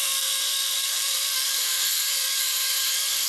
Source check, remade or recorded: remade